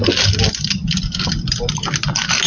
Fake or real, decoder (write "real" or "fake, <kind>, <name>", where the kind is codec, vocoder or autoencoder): real